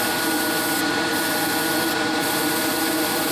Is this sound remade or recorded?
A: recorded